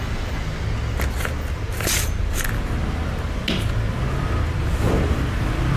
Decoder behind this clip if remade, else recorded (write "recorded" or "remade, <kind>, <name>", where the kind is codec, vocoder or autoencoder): recorded